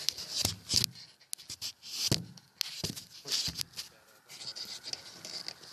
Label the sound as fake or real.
real